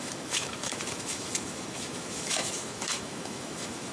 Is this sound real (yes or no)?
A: no